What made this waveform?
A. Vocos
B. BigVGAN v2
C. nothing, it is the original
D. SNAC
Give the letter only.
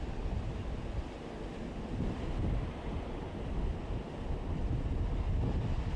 C